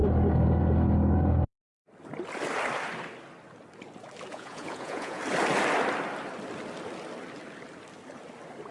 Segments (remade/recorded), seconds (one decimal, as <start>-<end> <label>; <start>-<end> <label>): 0.0-4.3 recorded; 4.3-5.2 remade; 5.2-8.7 recorded